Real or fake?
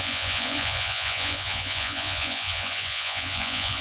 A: fake